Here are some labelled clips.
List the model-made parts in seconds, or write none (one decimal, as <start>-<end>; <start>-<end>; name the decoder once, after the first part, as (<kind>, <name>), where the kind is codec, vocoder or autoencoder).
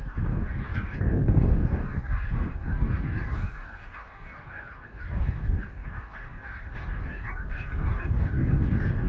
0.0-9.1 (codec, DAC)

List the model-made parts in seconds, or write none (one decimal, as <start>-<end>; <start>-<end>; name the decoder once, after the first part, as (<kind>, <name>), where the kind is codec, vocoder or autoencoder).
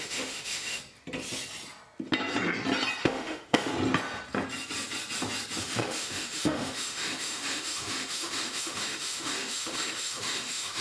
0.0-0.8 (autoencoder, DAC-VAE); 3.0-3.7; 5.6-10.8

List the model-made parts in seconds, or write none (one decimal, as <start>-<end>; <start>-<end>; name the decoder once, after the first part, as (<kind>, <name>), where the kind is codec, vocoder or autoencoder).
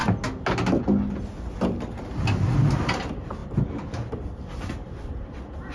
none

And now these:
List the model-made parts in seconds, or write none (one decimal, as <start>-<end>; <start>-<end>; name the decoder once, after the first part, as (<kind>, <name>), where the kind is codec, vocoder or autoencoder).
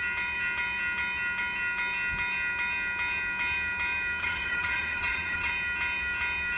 4.2-5.5 (vocoder, Vocos)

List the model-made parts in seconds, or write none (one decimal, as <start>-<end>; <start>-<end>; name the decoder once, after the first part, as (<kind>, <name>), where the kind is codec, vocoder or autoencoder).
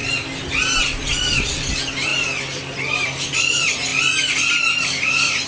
0.8-3.9 (vocoder, BigVGAN v2); 4.8-5.5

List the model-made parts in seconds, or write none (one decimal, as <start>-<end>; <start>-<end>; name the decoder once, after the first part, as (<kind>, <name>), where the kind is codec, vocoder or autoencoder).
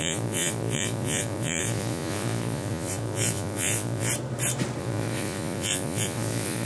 0.0-4.1 (vocoder, Vocos); 4.8-6.7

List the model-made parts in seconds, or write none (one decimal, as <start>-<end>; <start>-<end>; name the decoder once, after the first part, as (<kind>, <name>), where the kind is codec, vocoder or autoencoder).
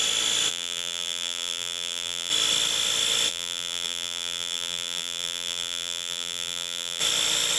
0.5-2.3 (vocoder, BigVGAN v2); 3.3-7.0